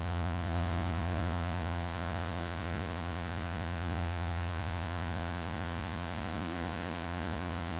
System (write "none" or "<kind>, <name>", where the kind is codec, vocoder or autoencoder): vocoder, Vocos